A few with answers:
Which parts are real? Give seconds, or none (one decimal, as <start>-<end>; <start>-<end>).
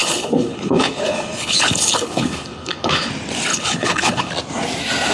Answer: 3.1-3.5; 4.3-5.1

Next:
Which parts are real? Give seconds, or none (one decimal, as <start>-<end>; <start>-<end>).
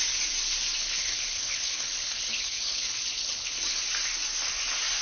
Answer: 0.0-0.8; 3.8-5.0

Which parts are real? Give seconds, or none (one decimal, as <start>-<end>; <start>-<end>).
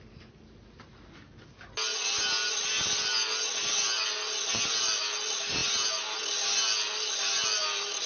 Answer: 0.0-8.1